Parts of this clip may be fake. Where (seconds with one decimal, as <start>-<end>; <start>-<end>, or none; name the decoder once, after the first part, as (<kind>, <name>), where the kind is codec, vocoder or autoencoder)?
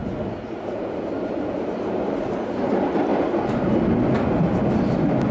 none